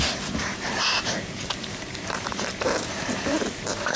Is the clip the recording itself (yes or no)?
no